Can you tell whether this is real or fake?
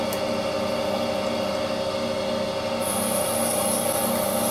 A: real